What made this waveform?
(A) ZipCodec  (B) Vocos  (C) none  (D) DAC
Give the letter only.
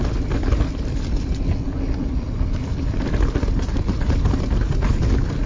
C